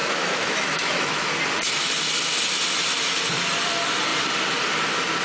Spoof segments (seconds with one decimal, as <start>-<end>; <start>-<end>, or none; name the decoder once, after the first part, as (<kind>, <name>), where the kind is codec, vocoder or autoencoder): 0.0-1.3 (autoencoder, DAC-VAE)